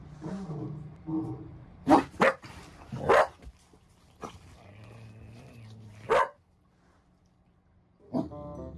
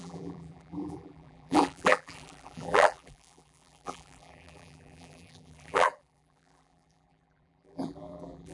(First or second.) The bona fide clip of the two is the first